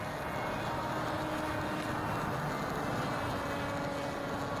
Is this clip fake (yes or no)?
no